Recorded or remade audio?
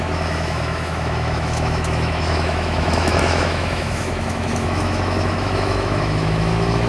remade